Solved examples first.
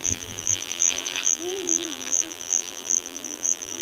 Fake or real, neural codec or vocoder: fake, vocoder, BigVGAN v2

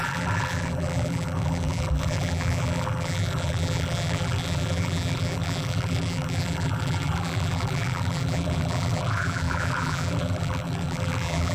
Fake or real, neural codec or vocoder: fake, vocoder, BigVGAN v2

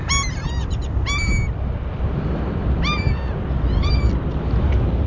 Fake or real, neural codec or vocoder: real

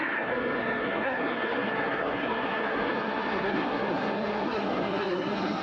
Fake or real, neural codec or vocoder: fake, codec, SNAC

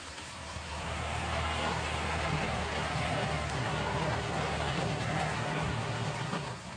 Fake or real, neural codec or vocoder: fake, codec, SNAC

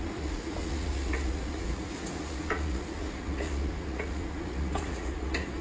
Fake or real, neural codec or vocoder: fake, vocoder, Vocos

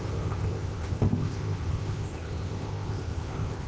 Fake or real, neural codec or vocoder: fake, codec, ZipCodec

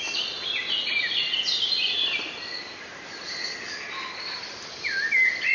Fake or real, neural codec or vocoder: real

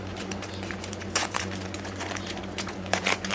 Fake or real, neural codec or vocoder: fake, vocoder, Vocos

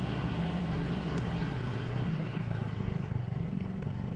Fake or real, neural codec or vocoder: fake, codec, SNAC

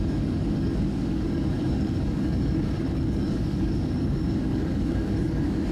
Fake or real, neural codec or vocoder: fake, codec, DAC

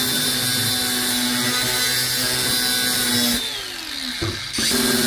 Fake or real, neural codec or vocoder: real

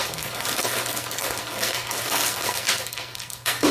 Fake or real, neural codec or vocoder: fake, codec, SNAC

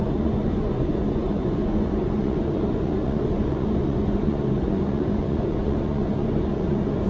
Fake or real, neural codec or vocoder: fake, vocoder, Vocos